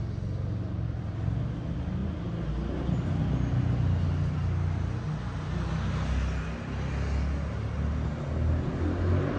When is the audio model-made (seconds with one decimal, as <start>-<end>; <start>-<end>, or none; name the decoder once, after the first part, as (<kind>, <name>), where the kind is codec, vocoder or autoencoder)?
none